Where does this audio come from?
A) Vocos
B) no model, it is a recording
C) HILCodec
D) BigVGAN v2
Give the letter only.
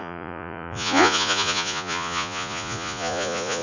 A